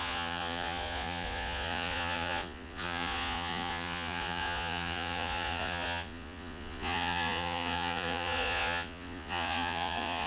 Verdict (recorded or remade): remade